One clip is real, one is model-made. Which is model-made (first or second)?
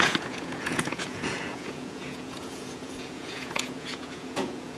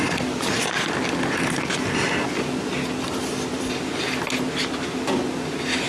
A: first